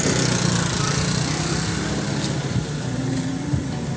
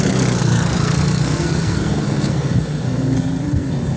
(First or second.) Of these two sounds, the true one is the first